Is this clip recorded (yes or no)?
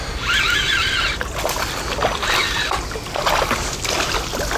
yes